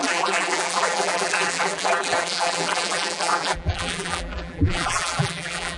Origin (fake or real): fake